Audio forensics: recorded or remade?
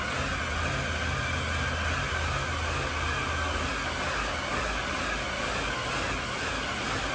recorded